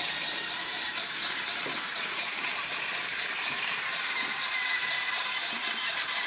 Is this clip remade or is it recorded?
remade